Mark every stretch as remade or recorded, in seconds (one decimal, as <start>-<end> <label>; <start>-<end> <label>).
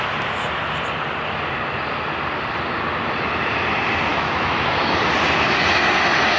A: 0.0-4.1 recorded; 4.1-4.9 remade; 4.9-6.4 recorded